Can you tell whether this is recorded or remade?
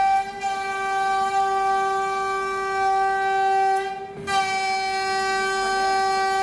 recorded